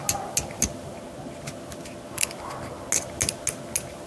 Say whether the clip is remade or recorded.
recorded